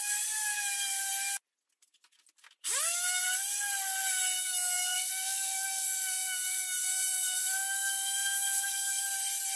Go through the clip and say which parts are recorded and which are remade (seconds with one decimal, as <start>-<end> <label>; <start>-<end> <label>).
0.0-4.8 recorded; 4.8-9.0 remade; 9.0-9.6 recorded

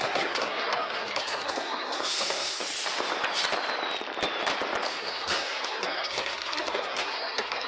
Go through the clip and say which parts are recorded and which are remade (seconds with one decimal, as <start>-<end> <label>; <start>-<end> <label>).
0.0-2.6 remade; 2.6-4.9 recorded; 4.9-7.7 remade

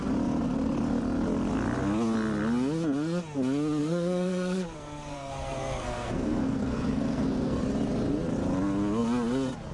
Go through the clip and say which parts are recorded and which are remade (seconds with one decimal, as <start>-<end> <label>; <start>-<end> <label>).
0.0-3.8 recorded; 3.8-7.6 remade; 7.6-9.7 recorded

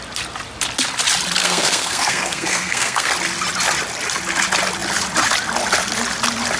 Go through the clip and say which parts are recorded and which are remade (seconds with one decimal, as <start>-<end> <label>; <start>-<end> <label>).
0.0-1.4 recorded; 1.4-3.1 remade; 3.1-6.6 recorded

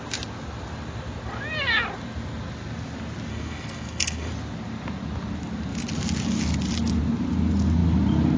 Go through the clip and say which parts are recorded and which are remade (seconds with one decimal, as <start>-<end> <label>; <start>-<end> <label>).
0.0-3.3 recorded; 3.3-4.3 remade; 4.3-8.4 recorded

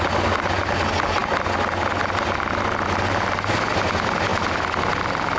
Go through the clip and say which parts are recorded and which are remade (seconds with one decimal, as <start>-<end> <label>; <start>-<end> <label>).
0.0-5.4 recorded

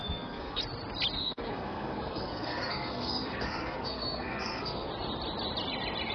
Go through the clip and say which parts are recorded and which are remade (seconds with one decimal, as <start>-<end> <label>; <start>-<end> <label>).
0.0-0.6 remade; 0.6-1.2 recorded; 1.2-4.9 remade; 4.9-6.1 recorded

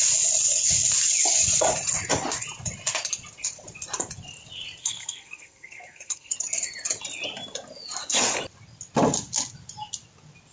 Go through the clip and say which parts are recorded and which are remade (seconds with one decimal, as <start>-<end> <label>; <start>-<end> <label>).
0.0-4.8 recorded; 4.8-6.3 remade; 6.3-10.5 recorded